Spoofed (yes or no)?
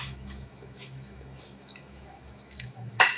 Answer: yes